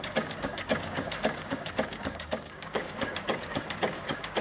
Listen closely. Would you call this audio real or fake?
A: fake